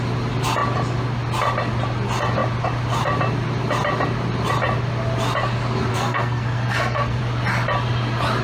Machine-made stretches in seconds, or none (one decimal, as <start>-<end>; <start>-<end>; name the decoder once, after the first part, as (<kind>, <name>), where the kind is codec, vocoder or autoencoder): 5.9-7.2 (codec, SNAC)